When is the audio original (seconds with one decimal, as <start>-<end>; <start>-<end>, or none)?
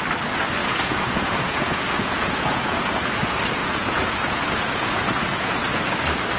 0.0-0.6; 3.0-3.6; 5.8-6.4